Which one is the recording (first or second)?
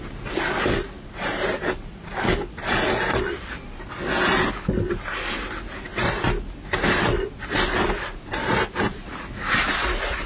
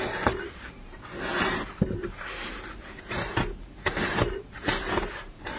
first